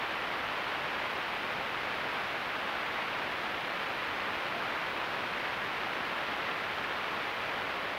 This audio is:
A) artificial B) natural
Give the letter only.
B